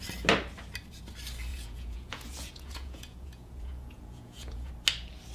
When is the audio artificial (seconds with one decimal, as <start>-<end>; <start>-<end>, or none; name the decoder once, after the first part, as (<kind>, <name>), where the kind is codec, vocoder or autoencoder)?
1.5-4.7 (vocoder, Vocos)

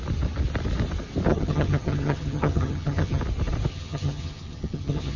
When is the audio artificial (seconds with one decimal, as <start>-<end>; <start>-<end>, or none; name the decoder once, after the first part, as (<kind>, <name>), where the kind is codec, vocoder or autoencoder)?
1.3-3.2 (vocoder, HiFi-GAN); 3.7-5.2

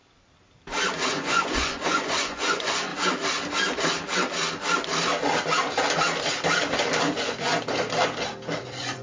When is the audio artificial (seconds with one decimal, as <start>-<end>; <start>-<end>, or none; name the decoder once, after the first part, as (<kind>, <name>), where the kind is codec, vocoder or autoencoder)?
1.1-2.9 (vocoder, Vocos); 7.0-7.5; 8.6-9.0

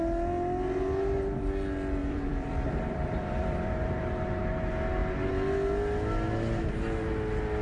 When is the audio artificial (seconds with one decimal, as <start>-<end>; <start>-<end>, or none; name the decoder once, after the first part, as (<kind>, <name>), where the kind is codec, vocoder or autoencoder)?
2.0-4.0 (vocoder, BigVGAN v2)

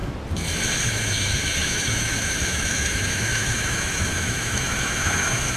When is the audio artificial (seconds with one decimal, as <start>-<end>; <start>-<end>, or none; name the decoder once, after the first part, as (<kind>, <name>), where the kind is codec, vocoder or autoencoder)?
0.9-5.6 (autoencoder, DAC-VAE)

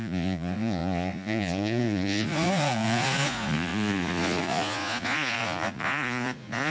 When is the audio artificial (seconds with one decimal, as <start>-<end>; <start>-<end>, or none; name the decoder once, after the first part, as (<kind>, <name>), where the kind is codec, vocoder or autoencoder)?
0.0-6.7 (vocoder, Vocos)

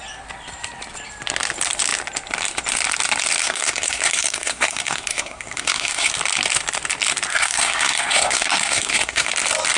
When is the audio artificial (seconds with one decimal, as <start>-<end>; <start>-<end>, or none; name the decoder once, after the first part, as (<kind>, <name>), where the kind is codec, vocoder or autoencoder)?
3.4-6.1 (codec, SNAC); 7.3-9.3

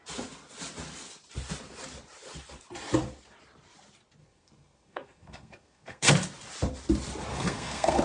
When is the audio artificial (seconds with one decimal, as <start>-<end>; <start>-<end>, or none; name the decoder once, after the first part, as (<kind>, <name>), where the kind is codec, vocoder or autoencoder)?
4.2-6.1 (codec, SNAC); 7.3-8.0